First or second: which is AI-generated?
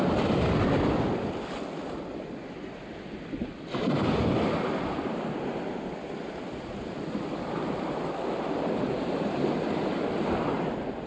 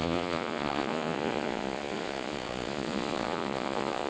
second